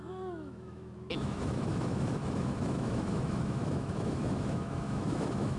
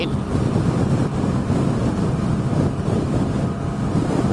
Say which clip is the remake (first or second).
first